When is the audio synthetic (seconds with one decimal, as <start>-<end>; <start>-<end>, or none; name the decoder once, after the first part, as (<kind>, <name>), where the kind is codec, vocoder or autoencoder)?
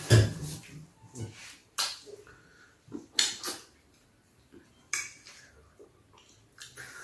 none